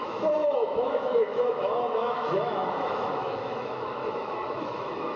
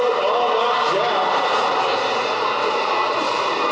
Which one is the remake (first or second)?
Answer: first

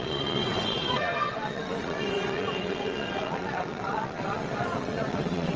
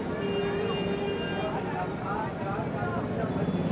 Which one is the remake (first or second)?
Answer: first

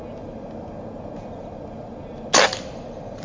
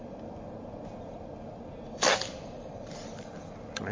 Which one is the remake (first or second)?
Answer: second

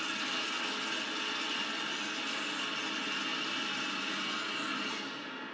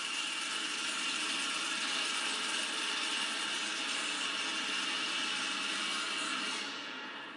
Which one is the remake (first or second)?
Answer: second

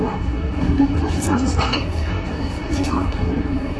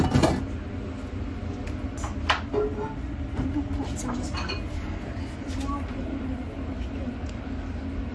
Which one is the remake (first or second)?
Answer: first